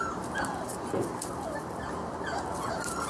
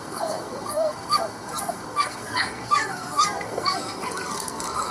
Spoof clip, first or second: second